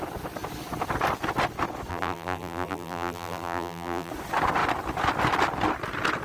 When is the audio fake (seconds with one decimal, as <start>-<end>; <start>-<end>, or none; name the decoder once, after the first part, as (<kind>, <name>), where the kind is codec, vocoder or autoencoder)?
1.9-4.1 (vocoder, BigVGAN v2)